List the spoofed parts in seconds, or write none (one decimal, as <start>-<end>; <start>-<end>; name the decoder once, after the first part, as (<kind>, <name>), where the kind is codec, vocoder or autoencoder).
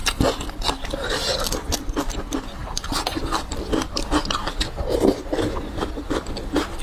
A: 0.7-6.8 (vocoder, BigVGAN v2)